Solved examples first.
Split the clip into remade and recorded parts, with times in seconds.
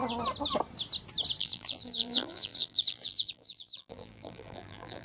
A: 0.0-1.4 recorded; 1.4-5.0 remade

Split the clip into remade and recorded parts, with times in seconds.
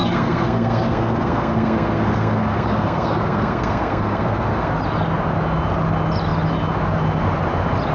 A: 0.0-4.7 remade; 4.7-7.9 recorded